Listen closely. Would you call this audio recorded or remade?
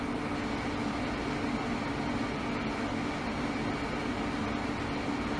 recorded